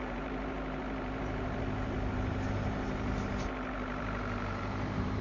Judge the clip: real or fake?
fake